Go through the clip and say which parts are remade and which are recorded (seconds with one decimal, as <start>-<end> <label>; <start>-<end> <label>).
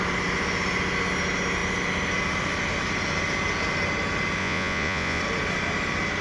0.0-4.4 recorded; 4.4-5.2 remade; 5.2-6.2 recorded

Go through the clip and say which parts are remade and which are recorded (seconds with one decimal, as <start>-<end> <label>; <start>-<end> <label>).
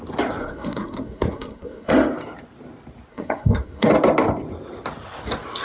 0.0-0.4 recorded; 0.4-1.9 remade; 1.9-3.1 recorded; 3.1-3.9 remade; 3.9-5.6 recorded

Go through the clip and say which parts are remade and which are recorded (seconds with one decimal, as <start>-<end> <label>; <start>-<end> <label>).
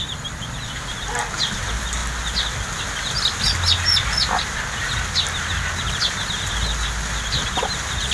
0.0-8.1 recorded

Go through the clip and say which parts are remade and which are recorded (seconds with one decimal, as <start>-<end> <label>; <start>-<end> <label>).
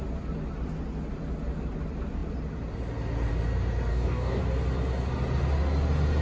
0.0-3.9 recorded; 3.9-4.4 remade; 4.4-6.2 recorded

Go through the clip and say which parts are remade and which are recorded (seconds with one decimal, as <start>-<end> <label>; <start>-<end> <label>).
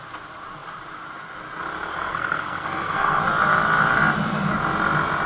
0.0-1.9 recorded; 1.9-3.2 remade; 3.2-5.3 recorded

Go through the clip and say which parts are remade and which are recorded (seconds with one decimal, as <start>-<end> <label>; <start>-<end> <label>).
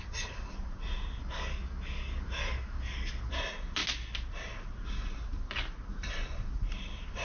0.0-1.2 recorded; 1.2-3.3 remade; 3.3-7.2 recorded